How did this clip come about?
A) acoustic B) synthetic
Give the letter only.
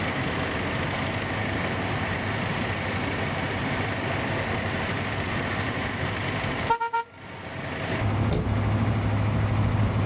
A